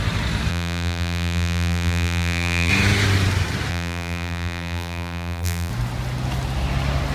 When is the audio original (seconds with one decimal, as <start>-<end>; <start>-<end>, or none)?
0.0-0.5; 2.7-3.7; 5.7-7.1